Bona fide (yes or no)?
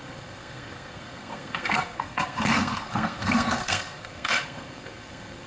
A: no